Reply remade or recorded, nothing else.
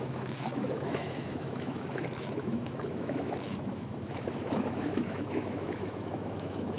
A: remade